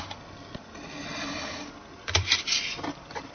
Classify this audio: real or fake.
fake